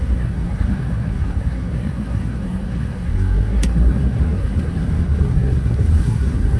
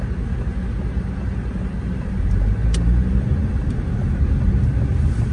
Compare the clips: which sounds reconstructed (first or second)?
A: first